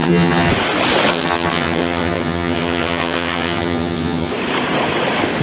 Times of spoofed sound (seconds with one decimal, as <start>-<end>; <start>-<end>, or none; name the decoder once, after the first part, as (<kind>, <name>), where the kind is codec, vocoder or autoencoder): 0.0-0.5 (vocoder, HiFi-GAN); 1.1-4.3

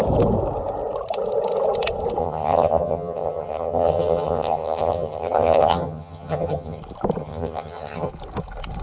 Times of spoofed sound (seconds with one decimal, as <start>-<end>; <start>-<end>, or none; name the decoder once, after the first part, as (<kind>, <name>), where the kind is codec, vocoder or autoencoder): 2.2-6.8 (vocoder, HiFi-GAN); 7.2-8.1